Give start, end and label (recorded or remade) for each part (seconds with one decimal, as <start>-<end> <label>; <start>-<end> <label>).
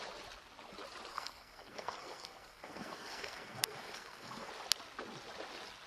0.0-1.1 recorded; 1.1-4.5 remade; 4.5-5.9 recorded